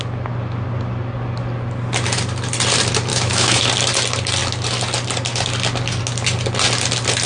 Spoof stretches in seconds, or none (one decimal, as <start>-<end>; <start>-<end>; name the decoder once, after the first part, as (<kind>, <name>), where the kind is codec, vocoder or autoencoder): 3.1-3.6 (autoencoder, DAC-VAE)